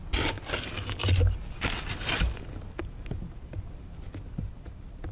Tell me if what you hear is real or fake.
real